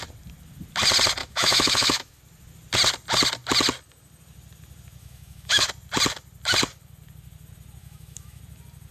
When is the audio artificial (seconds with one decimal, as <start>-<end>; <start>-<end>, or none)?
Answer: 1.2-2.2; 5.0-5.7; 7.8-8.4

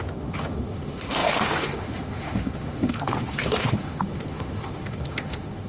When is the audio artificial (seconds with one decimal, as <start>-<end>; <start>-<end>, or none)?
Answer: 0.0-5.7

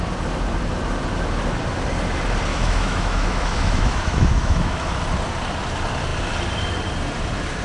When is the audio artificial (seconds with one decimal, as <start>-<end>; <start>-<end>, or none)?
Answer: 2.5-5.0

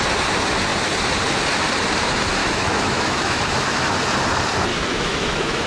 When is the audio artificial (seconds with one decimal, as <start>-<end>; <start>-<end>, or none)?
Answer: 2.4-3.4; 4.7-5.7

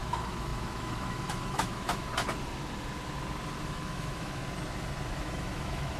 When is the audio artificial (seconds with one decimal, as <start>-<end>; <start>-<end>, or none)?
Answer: 0.0-2.1; 3.6-4.4; 5.1-6.0

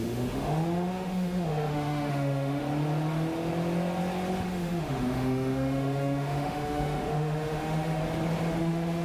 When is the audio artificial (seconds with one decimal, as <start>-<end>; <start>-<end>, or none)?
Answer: 0.0-2.6; 4.4-8.0; 8.6-9.0

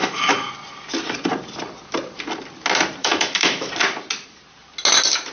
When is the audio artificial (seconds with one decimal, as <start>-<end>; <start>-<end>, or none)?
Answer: 0.0-0.5; 3.0-3.7